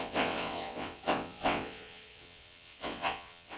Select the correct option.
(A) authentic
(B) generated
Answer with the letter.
B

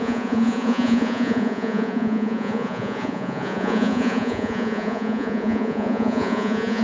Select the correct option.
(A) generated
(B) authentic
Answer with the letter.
A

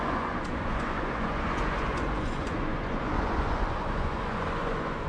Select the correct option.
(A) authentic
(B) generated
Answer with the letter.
B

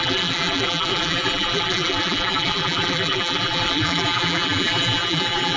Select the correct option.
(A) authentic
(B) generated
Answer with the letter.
B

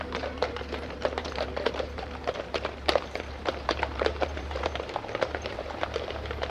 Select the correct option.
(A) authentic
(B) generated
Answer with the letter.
B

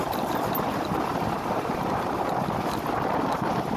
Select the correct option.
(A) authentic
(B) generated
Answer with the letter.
A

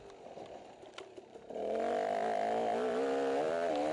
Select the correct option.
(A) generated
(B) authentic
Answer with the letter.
B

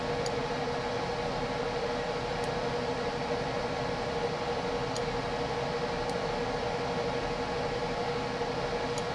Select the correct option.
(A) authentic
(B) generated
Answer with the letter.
A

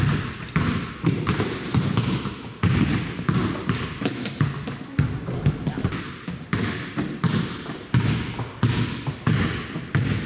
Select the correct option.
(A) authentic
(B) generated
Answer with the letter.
A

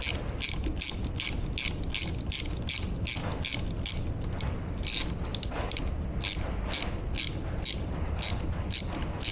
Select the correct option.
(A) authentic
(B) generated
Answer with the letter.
A